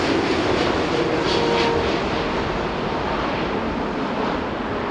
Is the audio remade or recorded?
recorded